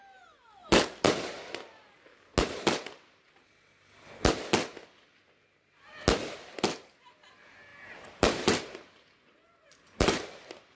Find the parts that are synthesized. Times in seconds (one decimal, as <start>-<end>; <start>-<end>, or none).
7.7-10.8